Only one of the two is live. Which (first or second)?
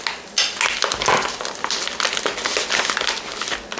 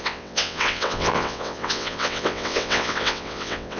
first